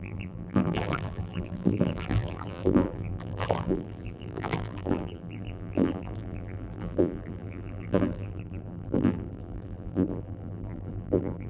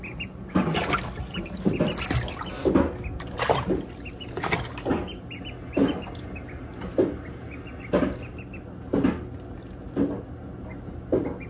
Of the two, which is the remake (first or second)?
first